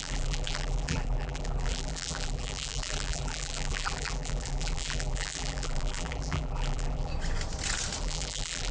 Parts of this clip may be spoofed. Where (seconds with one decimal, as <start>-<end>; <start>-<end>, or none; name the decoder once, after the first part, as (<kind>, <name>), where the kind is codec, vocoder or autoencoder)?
0.0-7.1 (vocoder, BigVGAN v2); 8.0-8.7